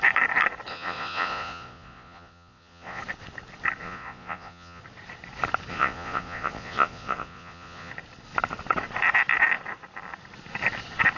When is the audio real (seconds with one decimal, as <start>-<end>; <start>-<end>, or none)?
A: 0.0-0.7; 3.0-3.8; 4.8-5.7; 7.9-11.2